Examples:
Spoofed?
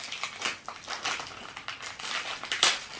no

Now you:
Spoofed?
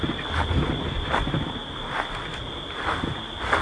no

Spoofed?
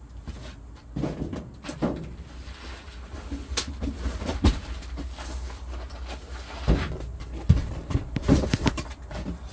no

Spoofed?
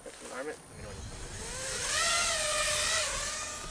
no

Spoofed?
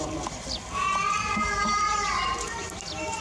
no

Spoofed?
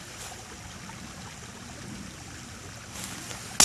no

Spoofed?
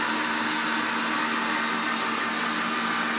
no